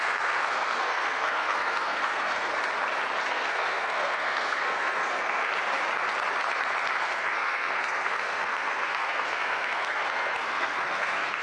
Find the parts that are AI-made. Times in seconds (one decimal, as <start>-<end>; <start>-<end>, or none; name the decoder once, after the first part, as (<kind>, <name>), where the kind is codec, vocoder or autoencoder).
0.0-2.5 (codec, SNAC); 3.3-5.5; 7.0-11.4